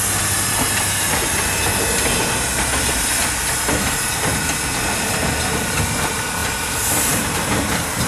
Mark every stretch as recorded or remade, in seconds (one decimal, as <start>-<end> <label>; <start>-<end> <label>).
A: 0.0-6.4 recorded; 6.4-8.1 remade